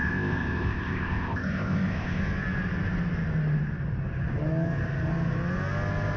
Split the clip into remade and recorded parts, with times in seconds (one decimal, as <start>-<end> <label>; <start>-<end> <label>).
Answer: 0.0-2.2 remade; 2.2-6.2 recorded